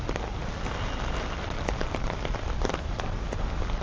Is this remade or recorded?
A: recorded